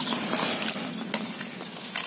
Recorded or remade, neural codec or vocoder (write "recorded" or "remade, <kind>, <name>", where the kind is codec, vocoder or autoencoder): recorded